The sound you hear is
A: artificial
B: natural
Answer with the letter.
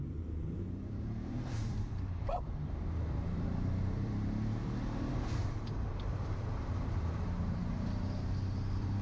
A